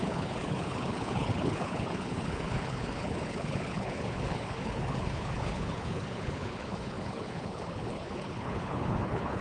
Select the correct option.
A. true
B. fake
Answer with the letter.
B